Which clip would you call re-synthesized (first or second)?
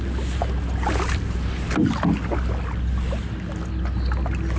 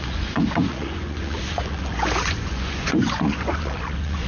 second